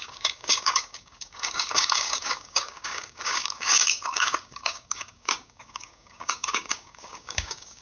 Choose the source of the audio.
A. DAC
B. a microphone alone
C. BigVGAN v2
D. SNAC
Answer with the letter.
A